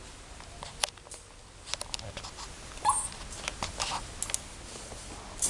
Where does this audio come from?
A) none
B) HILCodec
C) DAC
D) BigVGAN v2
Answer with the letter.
A